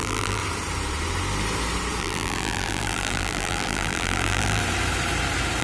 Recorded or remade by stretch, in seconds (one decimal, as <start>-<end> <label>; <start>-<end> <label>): 0.0-0.4 remade; 0.4-2.0 recorded; 2.0-4.6 remade; 4.6-5.6 recorded